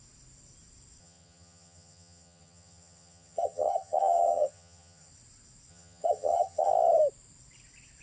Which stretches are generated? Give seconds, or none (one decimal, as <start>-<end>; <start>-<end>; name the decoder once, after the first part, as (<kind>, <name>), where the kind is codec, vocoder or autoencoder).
1.0-5.1 (vocoder, HiFi-GAN); 5.7-6.7